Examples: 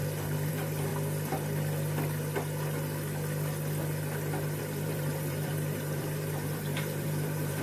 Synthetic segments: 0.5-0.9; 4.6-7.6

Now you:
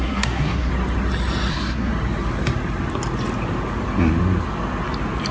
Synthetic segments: 0.0-0.7; 1.5-1.9

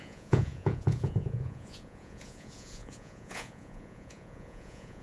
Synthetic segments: 0.0-5.0

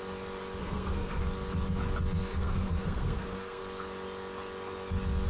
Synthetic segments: 0.6-1.2; 2.3-3.6

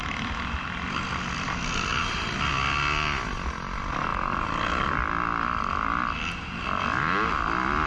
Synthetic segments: none